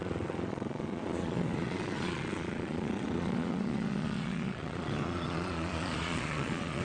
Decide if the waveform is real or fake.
fake